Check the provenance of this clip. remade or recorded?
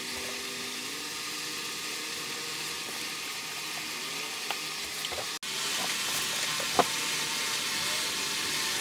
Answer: recorded